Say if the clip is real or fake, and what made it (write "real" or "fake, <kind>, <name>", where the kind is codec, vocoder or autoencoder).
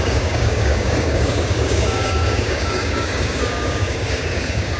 fake, codec, DAC